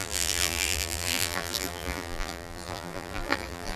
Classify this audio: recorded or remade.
remade